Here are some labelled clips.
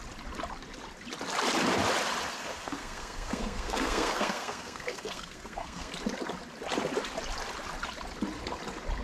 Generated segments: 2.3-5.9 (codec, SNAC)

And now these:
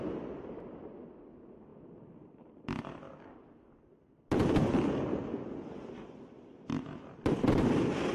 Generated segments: none

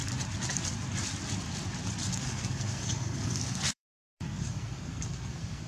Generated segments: 2.1-5.7 (codec, SNAC)

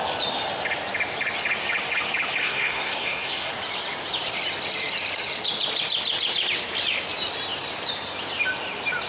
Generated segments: 2.4-3.5 (codec, SNAC)

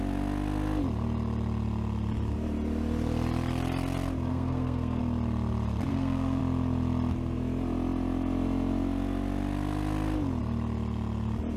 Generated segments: 4.3-5.0 (codec, SNAC); 5.9-6.4

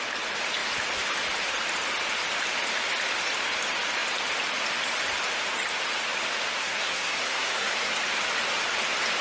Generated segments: 6.6-7.9 (codec, SNAC)

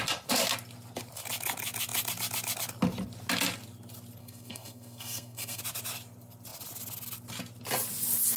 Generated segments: 4.2-5.6 (codec, SNAC)

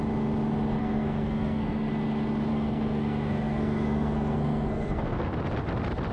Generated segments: 0.8-1.9 (codec, SNAC); 2.5-5.3